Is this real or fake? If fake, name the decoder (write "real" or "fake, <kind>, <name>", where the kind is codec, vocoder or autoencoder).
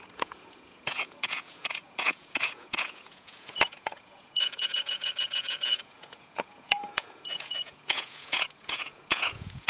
fake, vocoder, Vocos